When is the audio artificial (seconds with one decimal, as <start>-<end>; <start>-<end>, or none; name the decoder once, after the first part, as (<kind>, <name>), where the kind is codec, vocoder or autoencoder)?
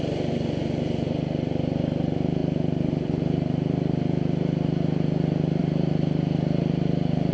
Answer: none